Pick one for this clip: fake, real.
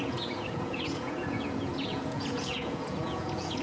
fake